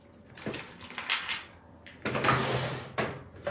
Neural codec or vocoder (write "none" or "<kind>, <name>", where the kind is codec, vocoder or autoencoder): none